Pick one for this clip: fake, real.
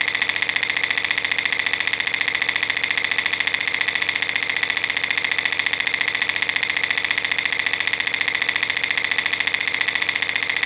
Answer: real